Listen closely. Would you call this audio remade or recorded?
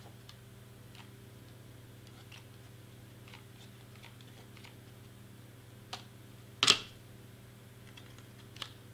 recorded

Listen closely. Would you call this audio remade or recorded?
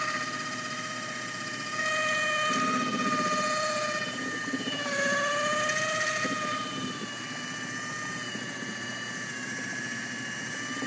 recorded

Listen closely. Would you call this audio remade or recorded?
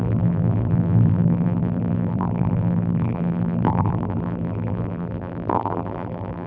remade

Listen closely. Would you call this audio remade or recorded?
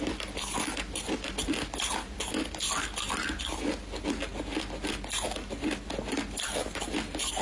recorded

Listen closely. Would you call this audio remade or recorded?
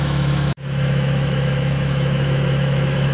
remade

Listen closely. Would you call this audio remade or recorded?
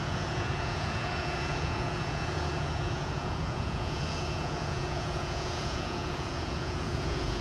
remade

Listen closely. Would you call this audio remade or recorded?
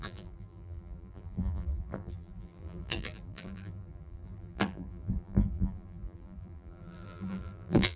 remade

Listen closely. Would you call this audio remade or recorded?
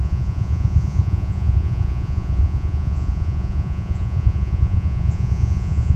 remade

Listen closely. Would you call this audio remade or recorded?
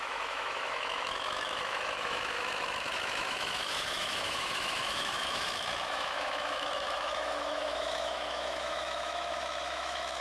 remade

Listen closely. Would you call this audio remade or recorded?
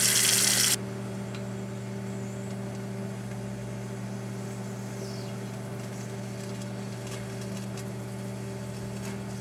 recorded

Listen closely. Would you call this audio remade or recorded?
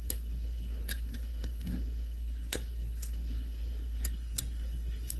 remade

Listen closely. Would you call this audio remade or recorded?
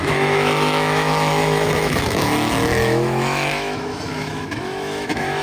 remade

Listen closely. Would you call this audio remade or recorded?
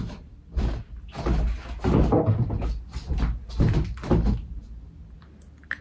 recorded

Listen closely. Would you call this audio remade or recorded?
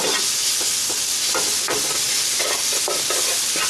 recorded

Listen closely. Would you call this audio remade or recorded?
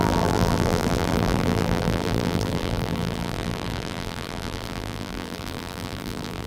remade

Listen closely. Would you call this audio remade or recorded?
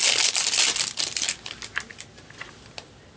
recorded